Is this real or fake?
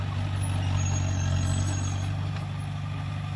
real